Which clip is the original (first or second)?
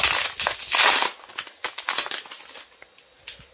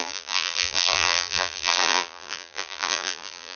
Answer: first